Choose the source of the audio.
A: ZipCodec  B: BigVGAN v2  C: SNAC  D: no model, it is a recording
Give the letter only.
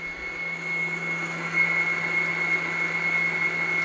D